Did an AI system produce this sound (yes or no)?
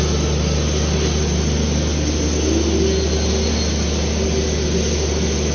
no